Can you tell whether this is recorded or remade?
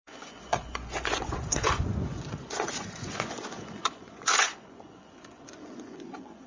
remade